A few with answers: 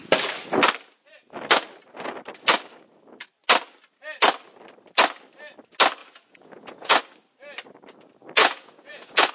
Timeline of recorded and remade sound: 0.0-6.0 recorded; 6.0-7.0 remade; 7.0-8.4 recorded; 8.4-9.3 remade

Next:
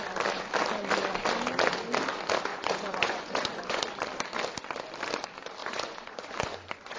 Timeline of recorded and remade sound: 0.0-2.5 recorded; 2.5-3.8 remade; 3.8-5.6 recorded; 5.6-7.0 remade

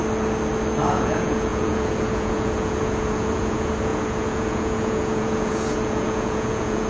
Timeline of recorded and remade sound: 0.0-0.9 recorded; 0.9-6.9 remade

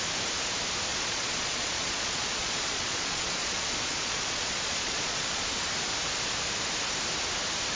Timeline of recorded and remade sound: 0.0-0.9 recorded; 0.9-5.6 remade; 5.6-7.8 recorded

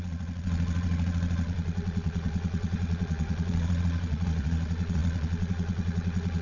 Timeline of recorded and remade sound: 0.0-6.4 remade